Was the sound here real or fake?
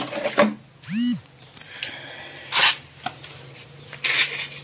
real